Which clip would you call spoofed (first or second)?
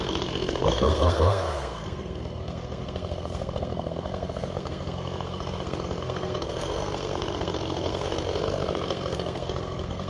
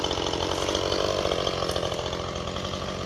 first